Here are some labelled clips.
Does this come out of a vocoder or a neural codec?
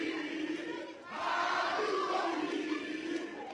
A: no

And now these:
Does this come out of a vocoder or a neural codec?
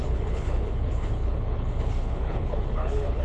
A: yes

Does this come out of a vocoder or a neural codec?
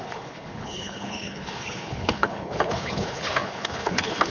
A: yes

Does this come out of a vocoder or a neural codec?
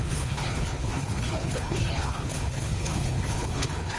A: yes